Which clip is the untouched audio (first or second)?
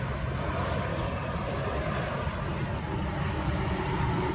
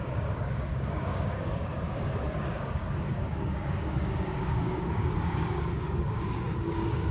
first